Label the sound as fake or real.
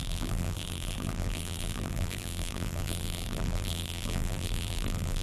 fake